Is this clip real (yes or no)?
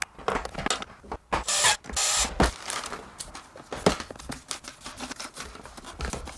yes